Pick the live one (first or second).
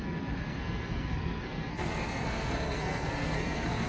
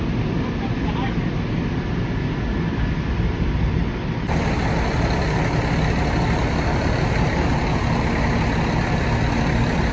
second